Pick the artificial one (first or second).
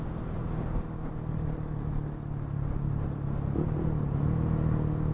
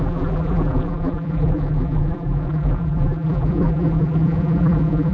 second